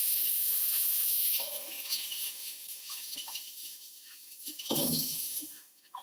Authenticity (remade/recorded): remade